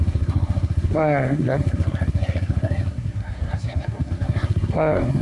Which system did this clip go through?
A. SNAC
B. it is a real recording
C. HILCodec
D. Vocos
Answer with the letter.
A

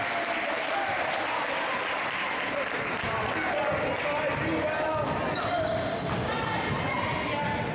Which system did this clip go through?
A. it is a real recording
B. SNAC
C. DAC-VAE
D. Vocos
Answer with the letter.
A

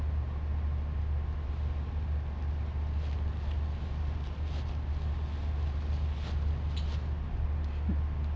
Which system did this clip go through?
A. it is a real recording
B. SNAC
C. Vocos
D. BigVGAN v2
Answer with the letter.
A